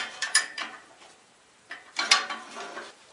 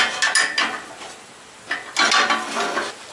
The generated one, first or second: first